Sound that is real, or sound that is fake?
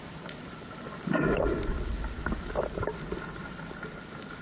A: real